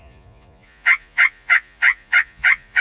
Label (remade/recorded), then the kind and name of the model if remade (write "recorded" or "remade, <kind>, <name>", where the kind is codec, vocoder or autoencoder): remade, vocoder, Vocos